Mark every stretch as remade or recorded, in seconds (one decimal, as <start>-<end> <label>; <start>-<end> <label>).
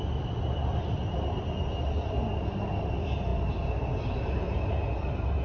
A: 0.0-5.4 recorded